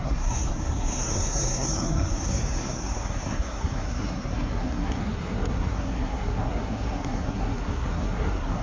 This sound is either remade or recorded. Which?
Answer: remade